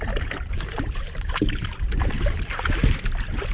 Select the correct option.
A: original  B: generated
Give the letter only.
B